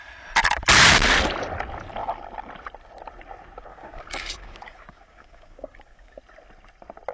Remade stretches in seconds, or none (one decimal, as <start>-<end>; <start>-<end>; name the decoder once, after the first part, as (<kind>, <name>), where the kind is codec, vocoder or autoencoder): 3.7-6.2 (codec, DAC)